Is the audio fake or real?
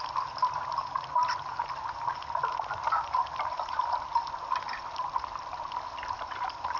real